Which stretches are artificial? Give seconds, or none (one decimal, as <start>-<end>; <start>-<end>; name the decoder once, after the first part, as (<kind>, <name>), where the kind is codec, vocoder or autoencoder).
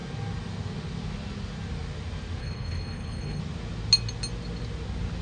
2.4-3.4 (codec, HILCodec)